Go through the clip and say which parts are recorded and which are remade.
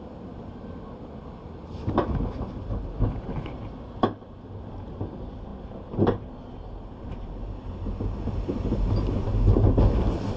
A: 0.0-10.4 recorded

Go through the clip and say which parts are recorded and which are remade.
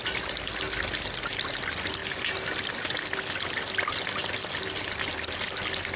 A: 0.0-6.0 recorded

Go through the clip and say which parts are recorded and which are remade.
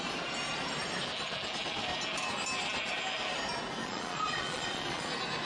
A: 0.0-3.8 recorded; 3.8-5.1 remade; 5.1-5.5 recorded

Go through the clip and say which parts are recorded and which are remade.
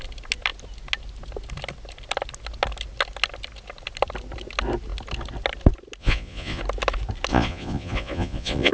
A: 0.0-6.0 recorded; 6.0-6.6 remade; 6.6-7.3 recorded; 7.3-8.7 remade